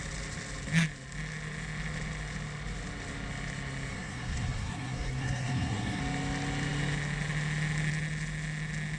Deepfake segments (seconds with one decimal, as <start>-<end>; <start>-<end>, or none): 3.9-6.0

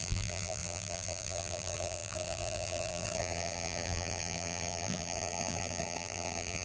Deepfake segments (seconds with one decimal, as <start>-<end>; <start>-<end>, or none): 0.0-6.6

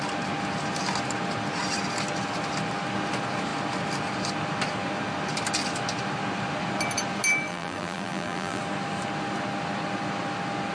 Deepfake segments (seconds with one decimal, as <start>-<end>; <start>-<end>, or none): 7.5-8.6